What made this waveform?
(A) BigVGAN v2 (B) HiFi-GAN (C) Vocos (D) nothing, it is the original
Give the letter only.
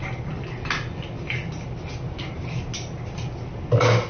D